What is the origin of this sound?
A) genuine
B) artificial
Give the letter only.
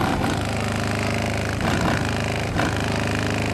A